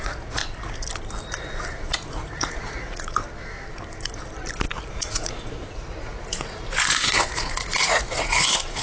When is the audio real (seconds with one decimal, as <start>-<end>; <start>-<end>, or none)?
0.4-1.3; 3.2-4.9